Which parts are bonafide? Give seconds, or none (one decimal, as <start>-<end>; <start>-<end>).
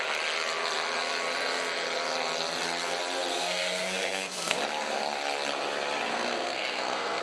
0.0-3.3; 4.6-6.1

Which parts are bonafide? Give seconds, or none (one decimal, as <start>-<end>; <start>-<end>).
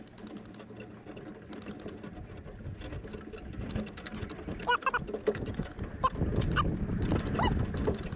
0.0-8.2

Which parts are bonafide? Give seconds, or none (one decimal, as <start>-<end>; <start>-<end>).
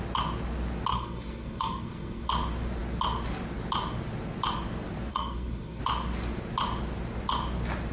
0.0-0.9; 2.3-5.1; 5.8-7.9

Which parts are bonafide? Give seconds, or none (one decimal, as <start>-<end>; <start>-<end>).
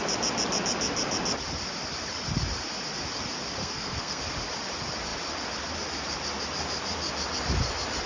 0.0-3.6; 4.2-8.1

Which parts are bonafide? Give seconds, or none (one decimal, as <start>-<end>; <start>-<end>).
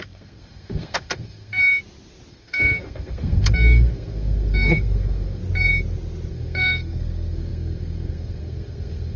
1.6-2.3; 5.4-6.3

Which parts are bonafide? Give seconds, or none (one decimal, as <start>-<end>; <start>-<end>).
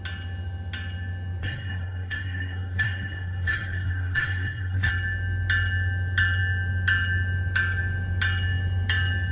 0.0-1.4; 4.9-9.3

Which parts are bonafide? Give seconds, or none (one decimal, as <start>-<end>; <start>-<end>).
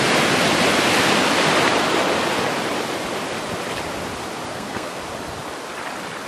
0.0-4.5; 5.0-6.3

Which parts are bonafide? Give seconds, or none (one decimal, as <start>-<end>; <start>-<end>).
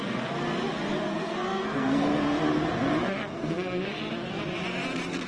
0.0-1.1; 2.4-3.0; 4.0-5.3